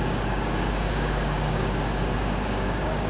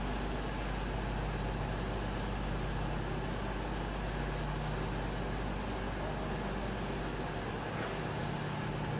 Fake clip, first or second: first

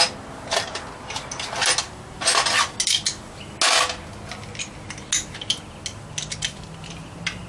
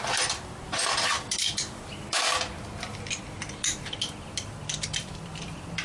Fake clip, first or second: second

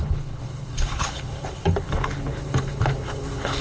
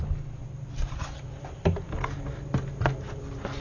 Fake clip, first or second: first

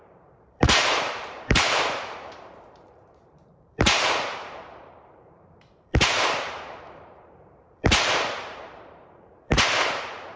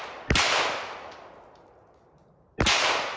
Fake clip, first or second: first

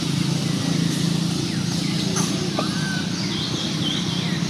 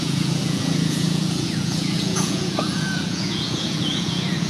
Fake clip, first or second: second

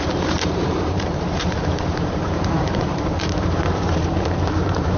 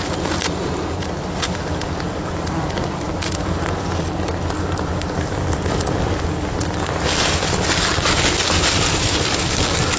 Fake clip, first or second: first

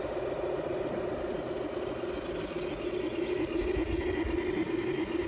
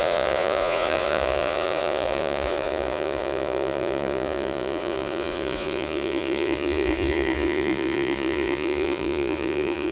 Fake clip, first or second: second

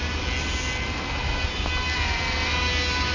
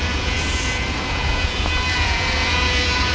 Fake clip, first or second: second